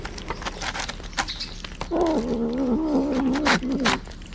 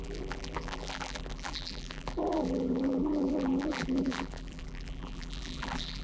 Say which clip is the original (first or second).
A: first